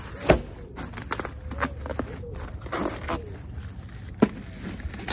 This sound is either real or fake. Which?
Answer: real